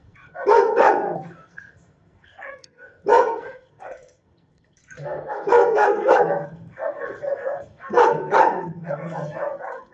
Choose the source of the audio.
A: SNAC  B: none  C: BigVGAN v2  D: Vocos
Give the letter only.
A